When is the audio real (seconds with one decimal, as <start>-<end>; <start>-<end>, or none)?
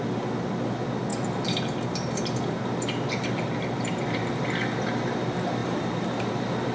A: 0.0-1.1; 4.4-5.6; 6.3-6.7